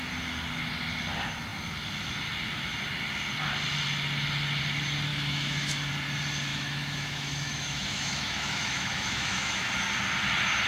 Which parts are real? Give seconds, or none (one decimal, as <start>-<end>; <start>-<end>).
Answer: 0.0-5.1; 5.9-6.5; 9.6-10.7